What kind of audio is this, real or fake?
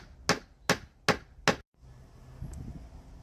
real